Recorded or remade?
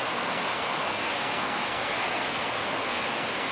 remade